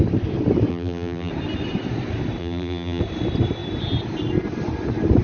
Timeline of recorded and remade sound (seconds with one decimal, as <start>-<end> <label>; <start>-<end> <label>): 0.0-0.7 recorded; 0.7-1.3 remade; 1.3-2.4 recorded; 2.4-3.0 remade; 3.0-5.2 recorded